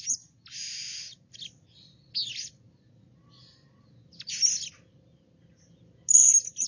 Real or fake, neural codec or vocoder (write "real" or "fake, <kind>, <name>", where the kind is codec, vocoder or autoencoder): real